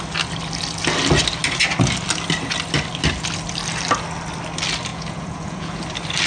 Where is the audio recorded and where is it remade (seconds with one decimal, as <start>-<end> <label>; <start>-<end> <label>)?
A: 0.0-4.9 recorded; 4.9-5.7 remade; 5.7-6.3 recorded